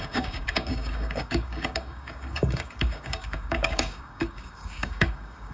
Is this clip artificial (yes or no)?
yes